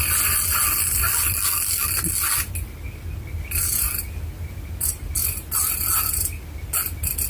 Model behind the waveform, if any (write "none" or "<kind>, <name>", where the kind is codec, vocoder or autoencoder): none